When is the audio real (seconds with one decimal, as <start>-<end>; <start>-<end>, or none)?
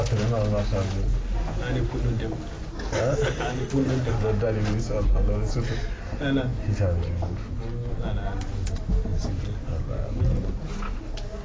0.0-11.4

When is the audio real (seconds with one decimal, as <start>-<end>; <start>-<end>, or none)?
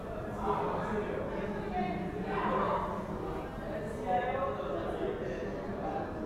0.0-6.3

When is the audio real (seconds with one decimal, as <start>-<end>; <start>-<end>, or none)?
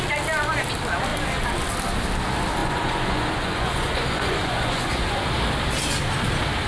0.0-2.6; 5.3-6.7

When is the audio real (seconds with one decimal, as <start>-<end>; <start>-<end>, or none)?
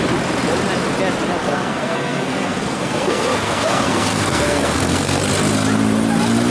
0.0-1.4; 5.3-6.5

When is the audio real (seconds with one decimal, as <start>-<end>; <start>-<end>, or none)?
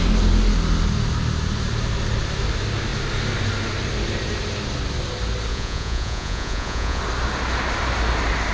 0.0-5.5; 7.0-8.5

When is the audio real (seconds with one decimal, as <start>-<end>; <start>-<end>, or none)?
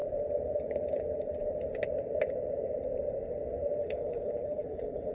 0.0-3.8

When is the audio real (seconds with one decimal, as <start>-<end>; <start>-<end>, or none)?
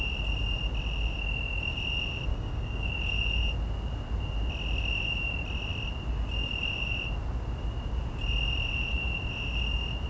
0.0-2.3; 2.9-10.1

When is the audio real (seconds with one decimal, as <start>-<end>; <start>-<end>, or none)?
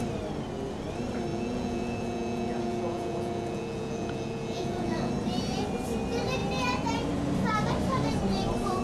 0.0-1.3; 5.1-8.8